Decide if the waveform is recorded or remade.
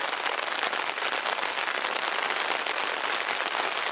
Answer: recorded